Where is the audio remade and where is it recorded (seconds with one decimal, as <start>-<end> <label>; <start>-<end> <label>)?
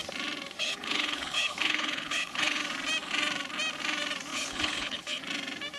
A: 0.0-0.6 recorded; 0.6-2.6 remade; 2.6-4.3 recorded; 4.3-5.2 remade; 5.2-5.8 recorded